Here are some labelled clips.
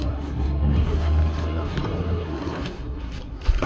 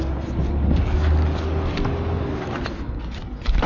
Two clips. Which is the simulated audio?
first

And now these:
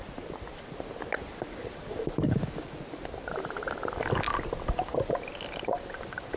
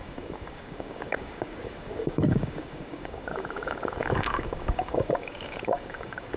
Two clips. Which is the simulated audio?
second